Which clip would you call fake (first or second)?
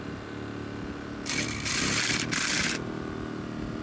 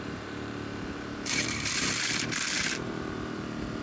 second